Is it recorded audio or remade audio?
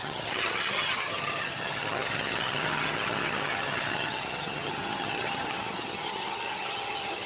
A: remade